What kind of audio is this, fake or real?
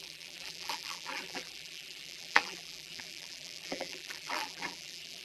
fake